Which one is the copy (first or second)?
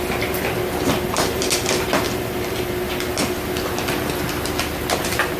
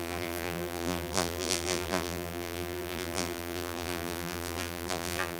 second